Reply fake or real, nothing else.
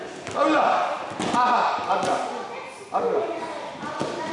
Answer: real